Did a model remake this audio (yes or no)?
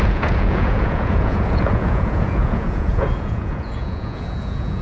yes